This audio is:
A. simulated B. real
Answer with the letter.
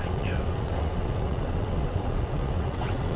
A